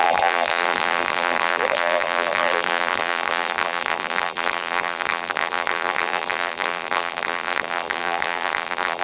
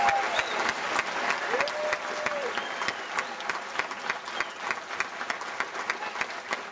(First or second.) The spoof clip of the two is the first